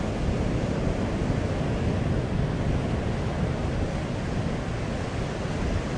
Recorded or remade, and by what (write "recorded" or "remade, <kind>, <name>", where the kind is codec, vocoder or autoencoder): recorded